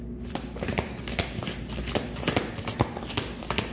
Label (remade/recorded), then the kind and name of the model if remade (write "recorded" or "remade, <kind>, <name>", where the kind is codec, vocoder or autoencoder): recorded